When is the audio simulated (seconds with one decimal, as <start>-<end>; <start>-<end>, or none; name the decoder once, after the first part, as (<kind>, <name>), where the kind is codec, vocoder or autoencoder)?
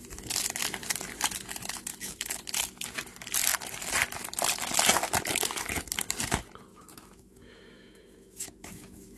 1.9-2.4 (autoencoder, DAC-VAE); 6.7-9.2